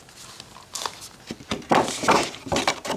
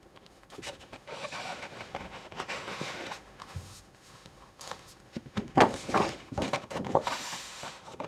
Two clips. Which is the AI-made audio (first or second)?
second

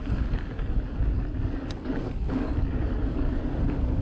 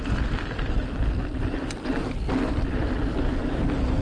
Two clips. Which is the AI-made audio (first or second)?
first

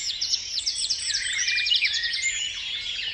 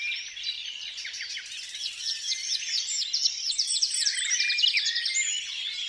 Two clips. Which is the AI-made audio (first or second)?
first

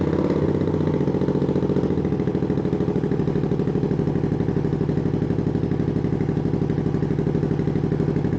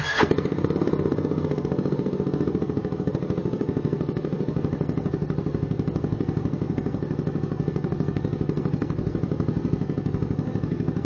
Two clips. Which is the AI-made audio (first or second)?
second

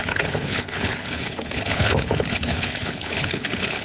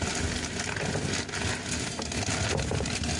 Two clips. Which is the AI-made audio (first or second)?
first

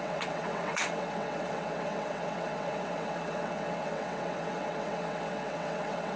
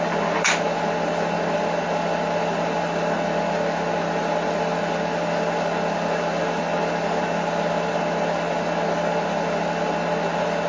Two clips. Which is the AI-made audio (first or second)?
first